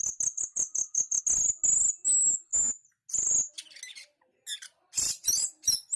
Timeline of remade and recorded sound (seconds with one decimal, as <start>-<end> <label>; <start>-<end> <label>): 0.0-6.0 recorded